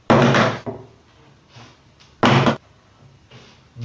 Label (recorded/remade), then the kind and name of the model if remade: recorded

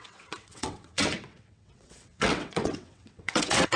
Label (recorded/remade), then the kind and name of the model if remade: remade, vocoder, WaveNeXt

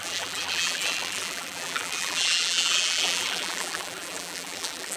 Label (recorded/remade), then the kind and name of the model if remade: remade, vocoder, BigVGAN v2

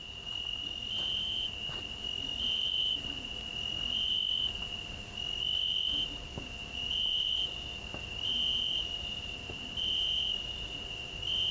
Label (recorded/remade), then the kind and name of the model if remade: recorded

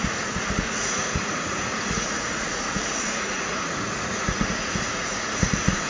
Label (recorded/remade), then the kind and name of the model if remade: remade, vocoder, Vocos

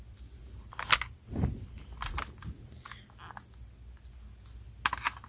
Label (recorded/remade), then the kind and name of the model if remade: recorded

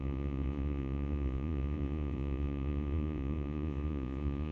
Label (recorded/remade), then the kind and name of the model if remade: remade, vocoder, Vocos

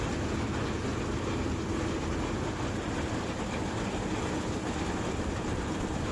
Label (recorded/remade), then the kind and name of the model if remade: recorded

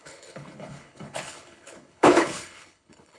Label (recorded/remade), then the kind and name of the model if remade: remade, codec, HILCodec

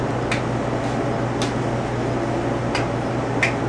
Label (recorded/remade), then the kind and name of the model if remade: recorded